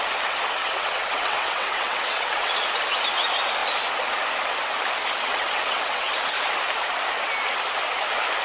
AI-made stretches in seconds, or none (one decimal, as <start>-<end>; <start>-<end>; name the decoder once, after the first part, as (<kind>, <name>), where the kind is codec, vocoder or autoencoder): 0.6-2.5 (vocoder, WaveNeXt); 5.3-6.1